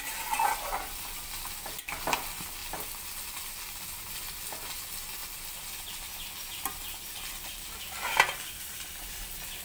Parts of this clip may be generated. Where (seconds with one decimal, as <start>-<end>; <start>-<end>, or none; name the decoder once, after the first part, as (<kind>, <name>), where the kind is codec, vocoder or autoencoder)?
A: none